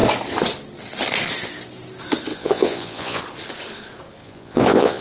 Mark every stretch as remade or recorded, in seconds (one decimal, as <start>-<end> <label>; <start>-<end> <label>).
0.0-2.3 recorded; 2.3-3.2 remade; 3.2-4.2 recorded; 4.2-5.0 remade